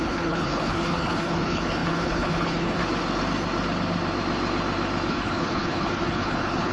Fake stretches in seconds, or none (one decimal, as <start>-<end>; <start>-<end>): 0.0-2.8; 5.1-6.7